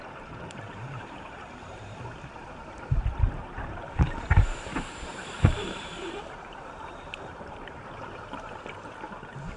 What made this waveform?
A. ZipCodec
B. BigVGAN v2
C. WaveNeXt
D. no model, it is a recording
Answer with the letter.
B